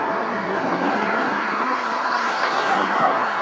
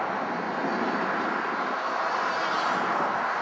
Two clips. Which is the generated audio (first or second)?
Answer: first